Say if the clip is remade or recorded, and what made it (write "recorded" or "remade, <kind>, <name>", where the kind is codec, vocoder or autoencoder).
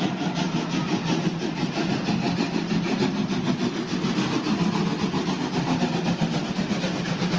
recorded